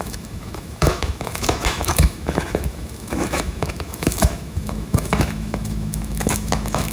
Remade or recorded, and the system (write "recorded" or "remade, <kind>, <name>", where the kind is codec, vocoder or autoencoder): remade, autoencoder, DAC-VAE